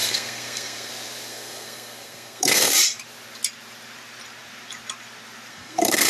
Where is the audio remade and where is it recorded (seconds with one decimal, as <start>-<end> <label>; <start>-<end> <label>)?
0.0-0.9 remade; 0.9-1.3 recorded; 1.3-2.7 remade; 2.7-5.5 recorded; 5.5-6.1 remade